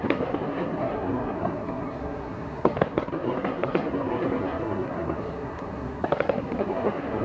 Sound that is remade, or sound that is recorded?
remade